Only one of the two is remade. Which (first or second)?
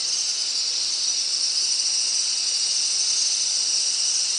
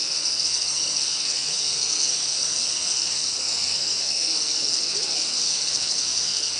second